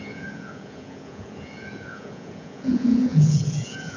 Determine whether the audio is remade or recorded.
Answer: remade